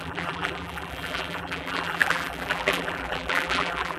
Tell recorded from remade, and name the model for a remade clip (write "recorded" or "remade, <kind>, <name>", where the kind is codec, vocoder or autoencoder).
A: remade, vocoder, BigVGAN v2